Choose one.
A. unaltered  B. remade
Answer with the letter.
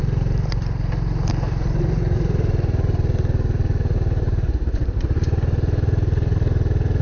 B